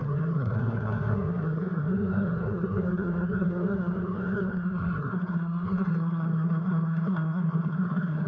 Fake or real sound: fake